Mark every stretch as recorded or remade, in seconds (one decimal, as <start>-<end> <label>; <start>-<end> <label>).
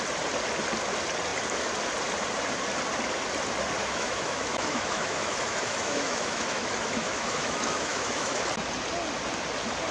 0.0-3.8 recorded; 3.8-8.4 remade; 8.4-9.9 recorded